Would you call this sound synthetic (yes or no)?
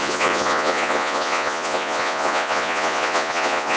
yes